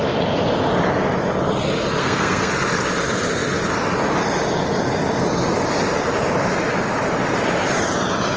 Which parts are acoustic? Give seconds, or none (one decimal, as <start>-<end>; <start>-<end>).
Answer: 0.0-2.0; 2.5-8.4